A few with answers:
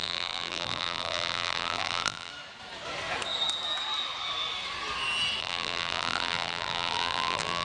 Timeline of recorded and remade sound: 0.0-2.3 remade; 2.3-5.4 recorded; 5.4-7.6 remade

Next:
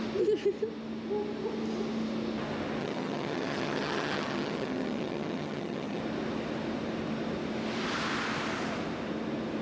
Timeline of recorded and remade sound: 0.0-2.8 recorded; 2.8-6.0 remade; 6.0-9.6 recorded

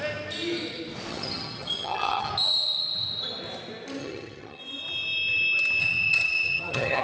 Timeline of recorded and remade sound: 0.0-1.1 recorded; 1.1-2.3 remade; 2.3-4.0 recorded; 4.0-4.6 remade; 4.6-5.8 recorded; 5.8-7.0 remade

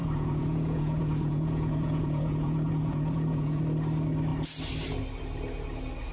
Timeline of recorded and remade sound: 0.0-3.6 remade; 3.6-6.1 recorded

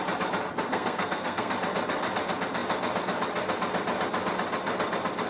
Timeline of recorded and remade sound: 0.0-0.7 recorded; 0.7-1.5 remade; 1.5-5.3 recorded

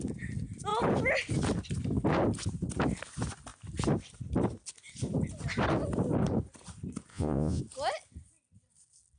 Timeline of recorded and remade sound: 0.0-7.1 recorded; 7.1-7.6 remade; 7.6-9.2 recorded

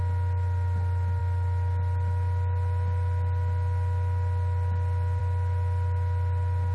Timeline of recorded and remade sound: 0.0-6.7 recorded

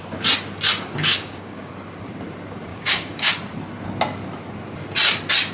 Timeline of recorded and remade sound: 0.0-1.1 recorded; 1.1-1.7 remade; 1.7-2.7 recorded; 2.7-3.3 remade; 3.3-5.5 recorded